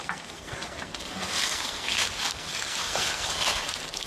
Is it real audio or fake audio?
fake